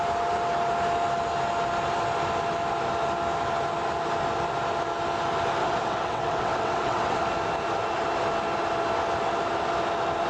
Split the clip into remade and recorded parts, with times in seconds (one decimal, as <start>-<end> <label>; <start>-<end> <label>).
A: 0.0-5.6 recorded; 5.6-7.2 remade; 7.2-10.3 recorded